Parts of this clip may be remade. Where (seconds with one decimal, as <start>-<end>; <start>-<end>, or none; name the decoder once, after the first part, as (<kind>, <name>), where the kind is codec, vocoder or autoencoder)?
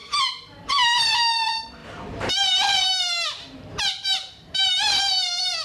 1.0-5.6 (vocoder, BigVGAN v2)